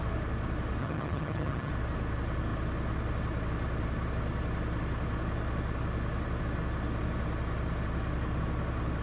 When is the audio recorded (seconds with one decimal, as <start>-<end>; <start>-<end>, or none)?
0.0-0.8; 1.7-9.0